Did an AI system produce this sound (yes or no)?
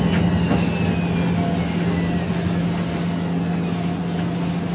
no